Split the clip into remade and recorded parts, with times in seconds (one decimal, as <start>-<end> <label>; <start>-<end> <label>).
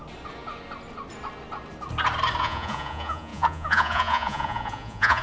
0.0-2.4 recorded; 2.4-5.2 remade